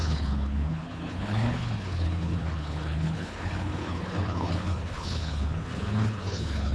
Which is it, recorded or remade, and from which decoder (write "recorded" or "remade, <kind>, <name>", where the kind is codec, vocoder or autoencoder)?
remade, codec, HILCodec